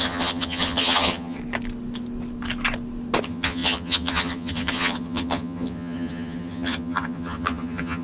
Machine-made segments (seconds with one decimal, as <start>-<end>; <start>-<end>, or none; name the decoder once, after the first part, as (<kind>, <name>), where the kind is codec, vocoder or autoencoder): 0.0-1.4 (vocoder, HiFi-GAN); 3.2-8.0